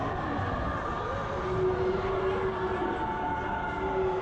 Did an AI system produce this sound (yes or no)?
no